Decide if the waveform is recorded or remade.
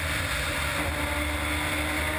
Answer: recorded